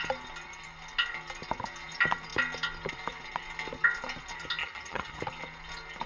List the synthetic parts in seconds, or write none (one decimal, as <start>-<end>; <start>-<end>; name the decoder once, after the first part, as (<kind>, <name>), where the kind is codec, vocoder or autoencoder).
4.6-5.2 (vocoder, HiFi-GAN)